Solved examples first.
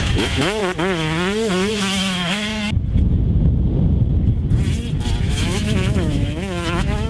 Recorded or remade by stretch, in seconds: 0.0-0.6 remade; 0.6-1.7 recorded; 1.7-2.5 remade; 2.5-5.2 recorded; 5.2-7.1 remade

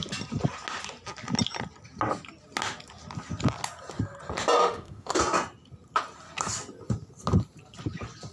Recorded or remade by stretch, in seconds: 0.0-4.6 recorded; 4.6-5.2 remade; 5.2-8.3 recorded

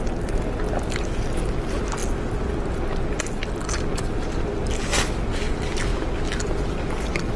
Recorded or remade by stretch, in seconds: 0.0-7.4 recorded

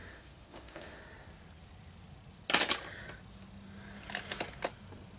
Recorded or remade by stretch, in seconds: 0.0-1.0 remade; 1.0-5.2 recorded

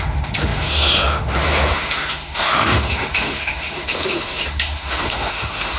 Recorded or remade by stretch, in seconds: 0.0-5.8 remade